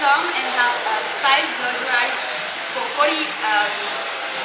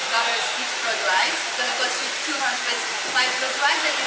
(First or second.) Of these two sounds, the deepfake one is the second